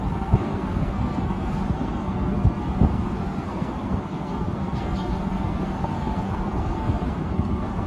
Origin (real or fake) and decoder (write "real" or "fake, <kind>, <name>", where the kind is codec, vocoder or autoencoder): fake, codec, SNAC